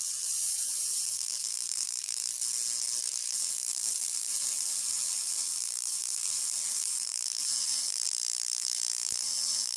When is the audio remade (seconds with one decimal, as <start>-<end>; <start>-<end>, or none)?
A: 0.0-2.3; 3.3-9.8

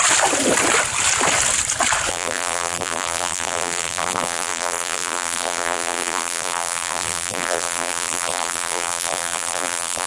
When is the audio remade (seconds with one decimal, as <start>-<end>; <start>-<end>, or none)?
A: 2.1-10.1

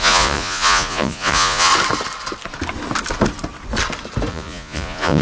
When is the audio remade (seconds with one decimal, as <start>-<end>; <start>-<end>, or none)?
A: 0.0-1.7; 4.3-5.2

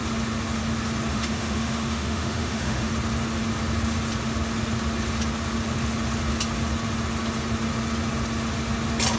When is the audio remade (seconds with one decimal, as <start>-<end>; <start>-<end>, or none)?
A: 1.1-2.9

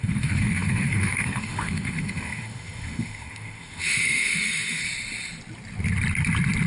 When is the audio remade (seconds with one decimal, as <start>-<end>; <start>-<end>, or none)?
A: 0.0-4.8

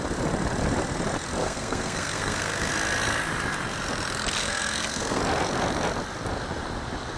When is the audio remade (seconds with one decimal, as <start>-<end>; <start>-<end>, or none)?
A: 1.4-2.7; 4.4-5.2